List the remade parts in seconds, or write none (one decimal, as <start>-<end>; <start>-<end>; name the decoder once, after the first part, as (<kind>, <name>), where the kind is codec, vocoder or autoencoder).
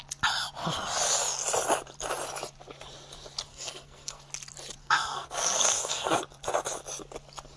3.5-4.2 (codec, SNAC); 4.8-6.2